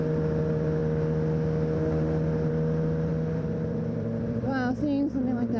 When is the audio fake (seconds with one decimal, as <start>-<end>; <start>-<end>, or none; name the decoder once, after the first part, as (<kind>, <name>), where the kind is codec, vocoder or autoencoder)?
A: 3.1-4.5 (vocoder, BigVGAN v2)